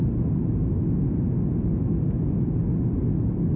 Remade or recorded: recorded